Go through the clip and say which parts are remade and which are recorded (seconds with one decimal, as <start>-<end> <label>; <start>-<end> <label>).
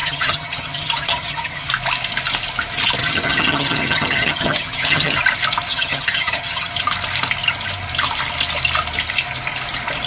0.0-1.7 remade; 1.7-3.0 recorded; 3.0-5.2 remade; 5.2-5.7 recorded; 5.7-6.7 remade; 6.7-10.1 recorded